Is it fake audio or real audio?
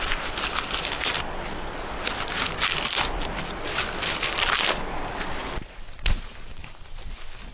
real